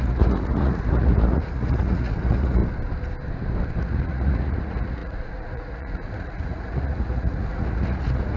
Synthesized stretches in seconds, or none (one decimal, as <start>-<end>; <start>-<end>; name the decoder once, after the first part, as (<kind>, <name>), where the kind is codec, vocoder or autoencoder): 0.0-2.6 (vocoder, Vocos); 3.8-8.4